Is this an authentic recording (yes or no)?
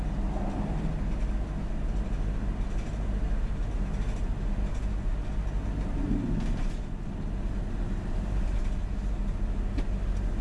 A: yes